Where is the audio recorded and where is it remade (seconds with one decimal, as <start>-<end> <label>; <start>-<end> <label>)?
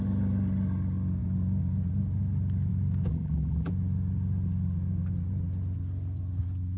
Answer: 0.0-3.1 recorded; 3.1-3.7 remade; 3.7-6.8 recorded